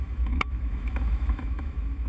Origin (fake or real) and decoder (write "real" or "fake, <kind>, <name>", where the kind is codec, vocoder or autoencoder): fake, autoencoder, DAC-VAE